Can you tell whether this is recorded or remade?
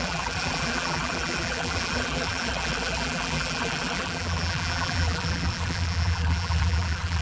remade